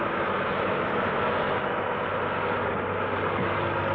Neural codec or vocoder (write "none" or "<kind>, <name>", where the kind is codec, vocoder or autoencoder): none